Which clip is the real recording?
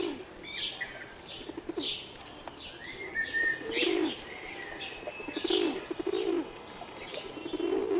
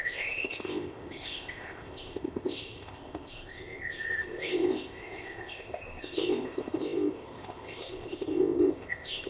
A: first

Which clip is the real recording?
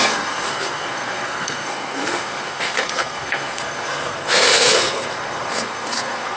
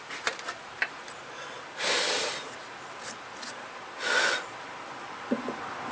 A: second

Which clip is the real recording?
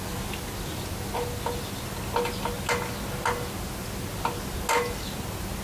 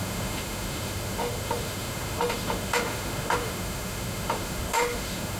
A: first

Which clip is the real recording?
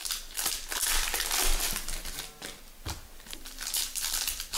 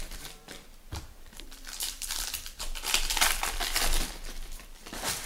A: first